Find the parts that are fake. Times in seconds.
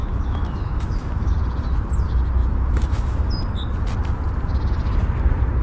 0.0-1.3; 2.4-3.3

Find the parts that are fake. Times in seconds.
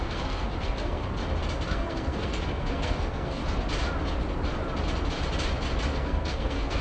0.0-1.2; 1.7-3.4; 5.9-6.8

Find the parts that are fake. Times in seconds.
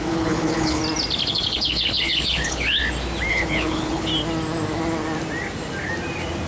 0.0-0.8; 1.3-2.8; 3.3-4.1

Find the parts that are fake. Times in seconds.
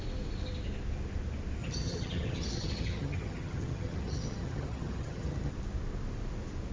1.6-5.5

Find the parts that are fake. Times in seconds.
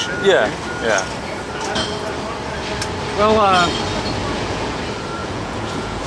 4.2-4.8; 5.2-6.1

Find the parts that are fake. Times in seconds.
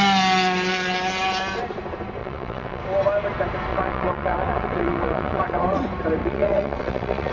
2.2-2.8; 3.7-5.8; 6.2-7.3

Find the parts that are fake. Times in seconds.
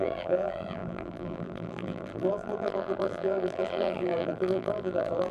0.0-5.3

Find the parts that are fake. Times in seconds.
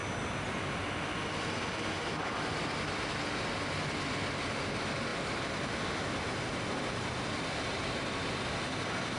none